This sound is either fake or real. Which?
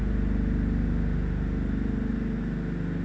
real